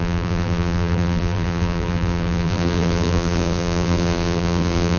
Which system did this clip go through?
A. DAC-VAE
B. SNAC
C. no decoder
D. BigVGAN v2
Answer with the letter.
D